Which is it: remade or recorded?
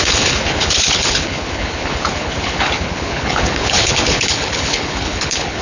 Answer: remade